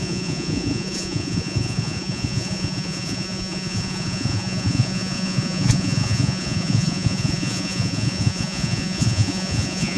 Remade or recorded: remade